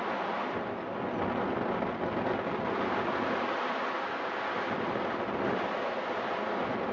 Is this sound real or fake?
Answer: real